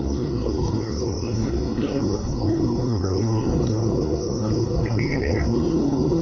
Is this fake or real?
fake